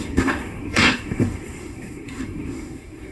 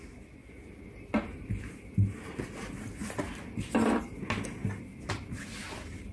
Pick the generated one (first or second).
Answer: first